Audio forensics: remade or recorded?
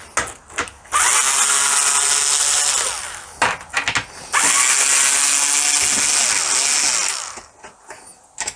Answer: recorded